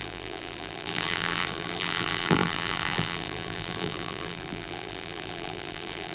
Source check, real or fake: fake